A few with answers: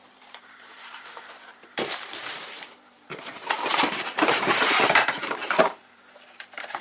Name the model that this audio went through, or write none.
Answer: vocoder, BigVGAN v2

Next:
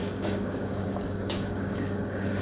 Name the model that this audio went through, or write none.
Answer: codec, DAC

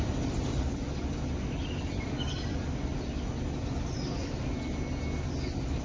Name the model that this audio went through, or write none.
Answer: none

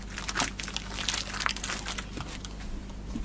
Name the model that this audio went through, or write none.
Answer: none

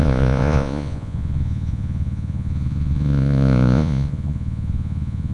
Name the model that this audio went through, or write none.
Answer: vocoder, Vocos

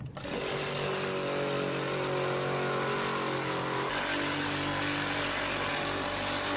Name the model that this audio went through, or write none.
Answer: none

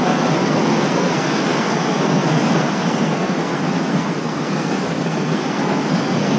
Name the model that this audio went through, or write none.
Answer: codec, SNAC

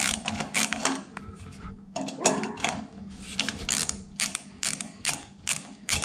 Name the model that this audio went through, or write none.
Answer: codec, DAC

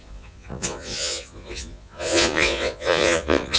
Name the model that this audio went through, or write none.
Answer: vocoder, Vocos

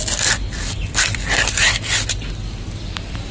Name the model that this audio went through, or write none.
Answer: none